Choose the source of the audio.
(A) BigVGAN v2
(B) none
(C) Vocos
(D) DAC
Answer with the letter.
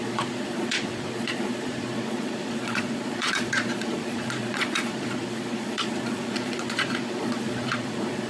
C